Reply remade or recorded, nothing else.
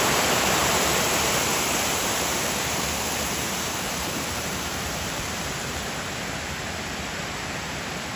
remade